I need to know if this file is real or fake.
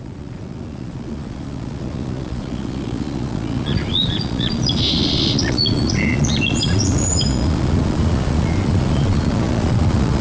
fake